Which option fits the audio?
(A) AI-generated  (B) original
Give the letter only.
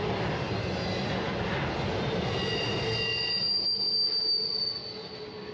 B